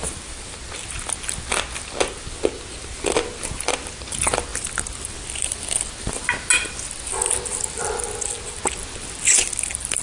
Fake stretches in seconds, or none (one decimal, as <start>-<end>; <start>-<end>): none